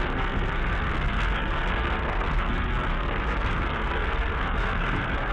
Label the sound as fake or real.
fake